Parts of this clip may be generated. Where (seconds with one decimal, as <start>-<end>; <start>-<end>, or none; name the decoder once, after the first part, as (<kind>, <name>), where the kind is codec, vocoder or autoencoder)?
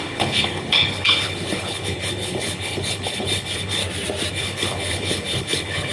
0.0-3.8 (codec, HILCodec); 4.3-5.9